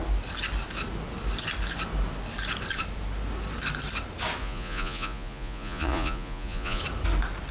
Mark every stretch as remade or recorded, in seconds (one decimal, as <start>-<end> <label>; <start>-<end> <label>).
0.0-4.4 recorded; 4.4-6.8 remade; 6.8-7.5 recorded